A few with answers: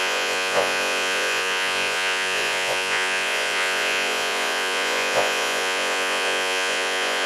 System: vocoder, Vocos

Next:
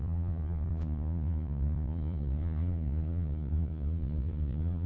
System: vocoder, Vocos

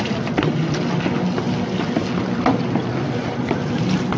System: none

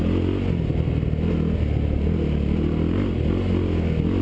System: none